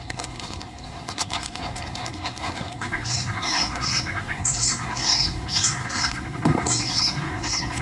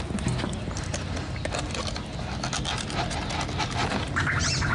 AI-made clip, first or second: first